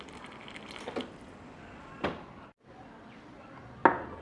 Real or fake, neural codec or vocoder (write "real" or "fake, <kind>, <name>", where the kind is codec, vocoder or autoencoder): real